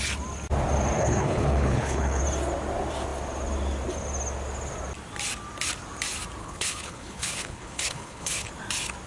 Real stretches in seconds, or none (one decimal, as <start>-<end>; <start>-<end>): 0.0-1.0; 2.2-6.4; 8.5-9.1